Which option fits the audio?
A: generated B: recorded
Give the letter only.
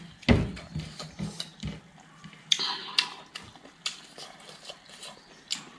B